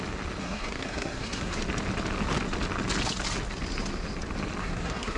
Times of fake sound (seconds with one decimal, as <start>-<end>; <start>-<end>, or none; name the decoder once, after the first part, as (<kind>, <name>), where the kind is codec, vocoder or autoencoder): 0.4-1.6 (codec, SNAC); 4.6-5.2